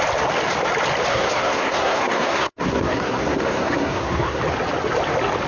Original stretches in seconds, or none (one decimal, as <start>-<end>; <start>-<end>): 0.0-1.1; 4.4-5.5